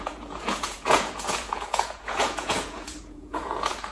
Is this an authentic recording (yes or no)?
no